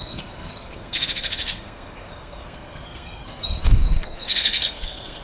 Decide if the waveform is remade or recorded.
remade